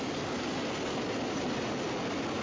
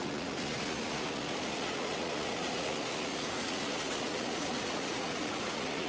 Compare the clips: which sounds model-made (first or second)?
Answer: second